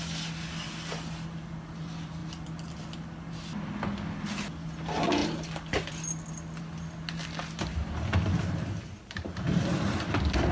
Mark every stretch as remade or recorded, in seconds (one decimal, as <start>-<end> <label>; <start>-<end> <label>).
0.0-10.5 recorded